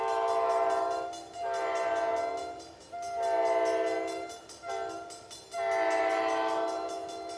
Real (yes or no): yes